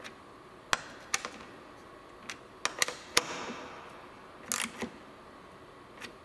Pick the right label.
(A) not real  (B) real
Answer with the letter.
B